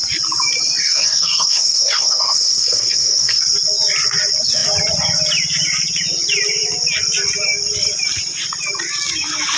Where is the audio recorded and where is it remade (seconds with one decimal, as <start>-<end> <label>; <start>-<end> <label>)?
0.0-0.8 recorded; 0.8-3.4 remade; 3.4-9.6 recorded